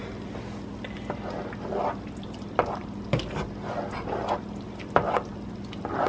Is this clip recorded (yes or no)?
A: yes